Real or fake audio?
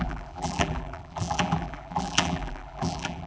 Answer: fake